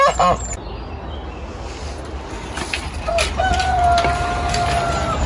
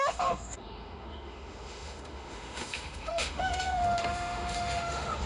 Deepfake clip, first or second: second